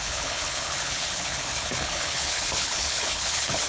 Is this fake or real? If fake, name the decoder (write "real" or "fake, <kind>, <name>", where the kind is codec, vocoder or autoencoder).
fake, codec, HILCodec